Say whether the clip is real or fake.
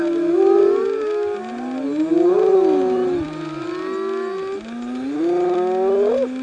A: real